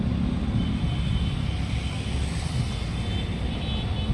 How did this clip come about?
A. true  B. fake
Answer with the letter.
A